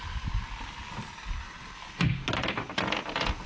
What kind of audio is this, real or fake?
real